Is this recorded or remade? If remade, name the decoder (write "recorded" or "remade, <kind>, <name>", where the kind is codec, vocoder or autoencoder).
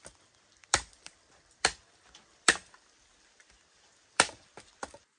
remade, vocoder, BigVGAN v2